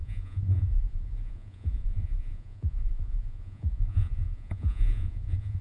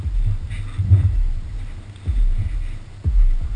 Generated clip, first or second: first